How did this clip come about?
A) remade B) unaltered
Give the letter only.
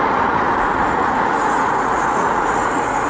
A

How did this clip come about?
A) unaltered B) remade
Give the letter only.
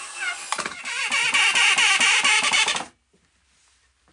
A